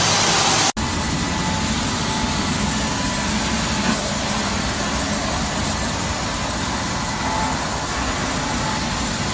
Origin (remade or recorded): recorded